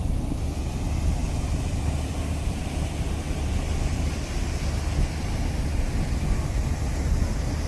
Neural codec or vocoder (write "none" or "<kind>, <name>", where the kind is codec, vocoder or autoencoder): none